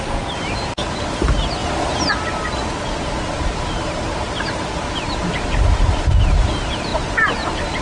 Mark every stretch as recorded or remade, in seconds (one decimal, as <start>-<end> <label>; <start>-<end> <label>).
0.0-7.8 recorded